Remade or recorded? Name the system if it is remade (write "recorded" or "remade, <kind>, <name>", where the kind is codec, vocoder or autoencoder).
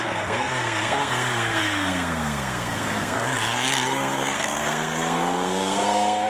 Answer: remade, codec, SNAC